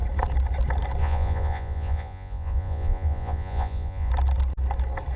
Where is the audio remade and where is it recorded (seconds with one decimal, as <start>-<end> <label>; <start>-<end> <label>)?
0.0-1.0 recorded; 1.0-4.1 remade; 4.1-5.2 recorded